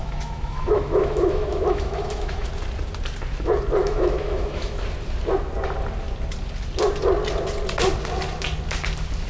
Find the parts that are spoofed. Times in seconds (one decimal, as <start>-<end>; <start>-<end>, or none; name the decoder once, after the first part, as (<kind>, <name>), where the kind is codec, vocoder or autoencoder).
0.0-2.5 (autoencoder, DAC-VAE); 3.8-4.8